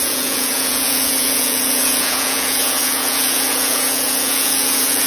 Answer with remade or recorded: remade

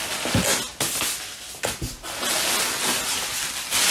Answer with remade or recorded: recorded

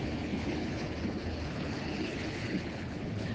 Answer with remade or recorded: remade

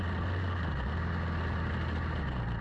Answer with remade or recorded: recorded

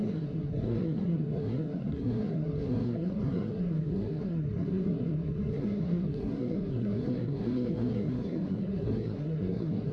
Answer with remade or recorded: remade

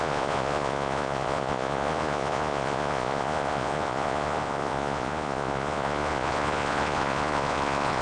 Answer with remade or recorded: remade